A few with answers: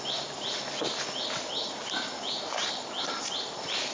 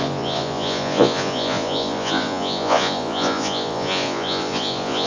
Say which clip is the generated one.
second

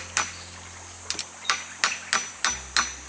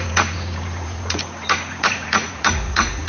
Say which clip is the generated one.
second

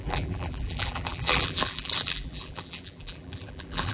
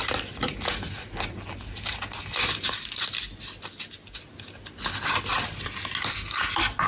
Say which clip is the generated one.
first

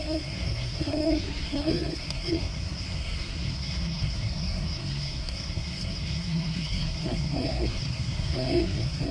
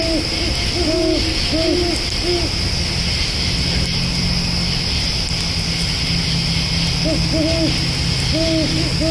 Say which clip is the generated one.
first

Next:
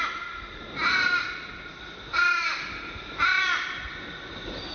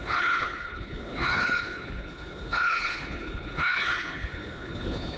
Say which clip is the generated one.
second